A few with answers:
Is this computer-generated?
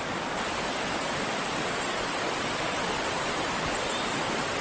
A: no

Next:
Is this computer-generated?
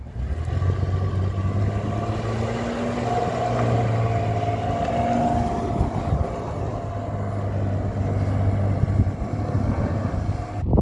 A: no